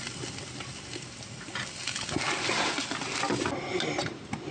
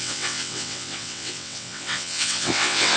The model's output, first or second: second